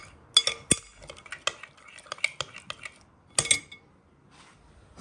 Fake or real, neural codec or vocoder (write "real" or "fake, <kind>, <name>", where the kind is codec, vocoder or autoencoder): real